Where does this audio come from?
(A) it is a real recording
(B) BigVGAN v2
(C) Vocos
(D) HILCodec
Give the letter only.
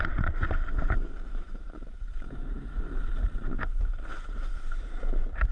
B